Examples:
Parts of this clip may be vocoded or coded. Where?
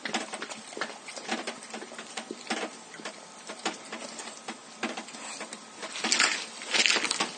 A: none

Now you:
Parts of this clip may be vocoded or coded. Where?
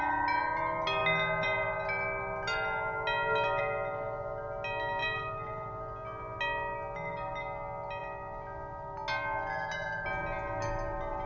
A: none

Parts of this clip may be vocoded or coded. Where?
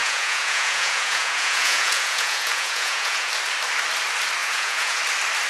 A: 0.0-3.3; 4.4-5.0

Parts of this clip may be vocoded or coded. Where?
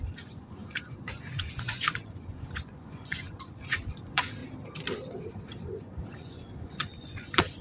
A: 0.0-4.4; 5.3-7.6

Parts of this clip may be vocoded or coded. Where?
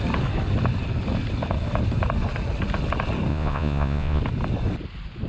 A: 3.3-4.2